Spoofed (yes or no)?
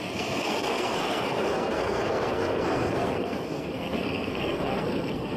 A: yes